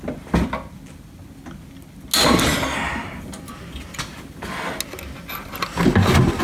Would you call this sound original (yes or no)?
yes